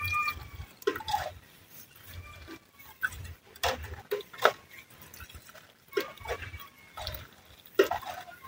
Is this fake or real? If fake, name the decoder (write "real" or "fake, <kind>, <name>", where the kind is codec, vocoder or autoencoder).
real